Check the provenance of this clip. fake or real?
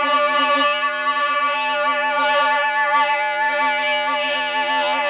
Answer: fake